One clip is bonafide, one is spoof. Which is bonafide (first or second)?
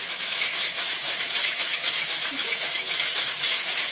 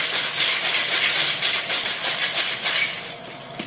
second